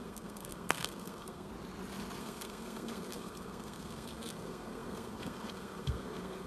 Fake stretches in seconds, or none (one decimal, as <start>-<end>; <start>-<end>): 0.0-1.5; 2.2-6.5

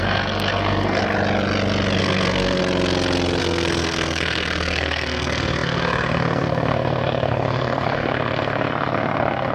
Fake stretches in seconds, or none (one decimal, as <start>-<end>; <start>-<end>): 0.0-1.0; 2.0-2.6; 3.4-9.5

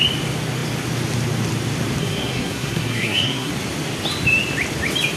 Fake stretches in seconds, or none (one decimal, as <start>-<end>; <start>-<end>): 2.0-3.5

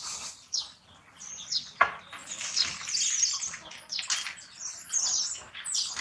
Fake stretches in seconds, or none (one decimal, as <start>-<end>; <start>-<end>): none